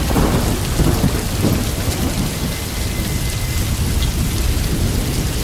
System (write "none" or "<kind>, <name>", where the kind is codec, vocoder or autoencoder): none